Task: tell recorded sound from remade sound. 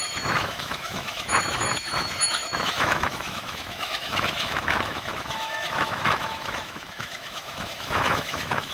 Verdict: remade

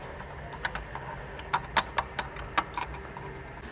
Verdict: recorded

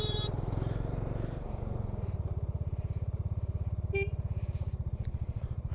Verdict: remade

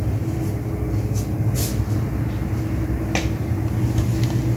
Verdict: recorded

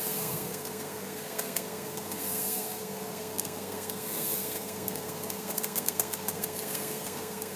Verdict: remade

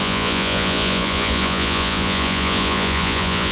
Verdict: remade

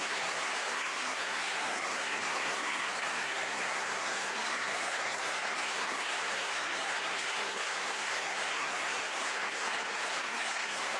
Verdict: remade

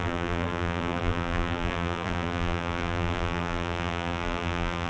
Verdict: remade